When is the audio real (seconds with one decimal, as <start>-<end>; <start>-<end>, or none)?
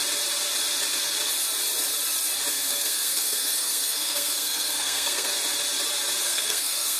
0.0-2.5; 5.3-6.2